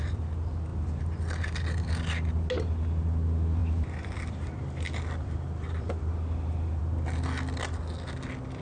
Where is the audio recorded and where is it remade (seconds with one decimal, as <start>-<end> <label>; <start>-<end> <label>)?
0.0-3.6 recorded; 3.6-6.8 remade; 6.8-8.6 recorded